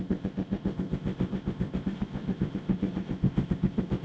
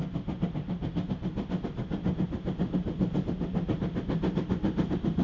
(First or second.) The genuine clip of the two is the second